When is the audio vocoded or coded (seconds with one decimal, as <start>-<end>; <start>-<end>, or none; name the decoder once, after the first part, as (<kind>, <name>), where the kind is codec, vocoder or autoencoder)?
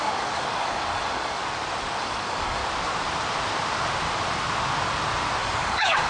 0.0-1.4 (codec, DAC); 2.0-2.6; 5.4-6.1